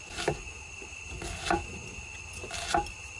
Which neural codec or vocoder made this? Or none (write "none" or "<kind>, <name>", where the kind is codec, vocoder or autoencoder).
none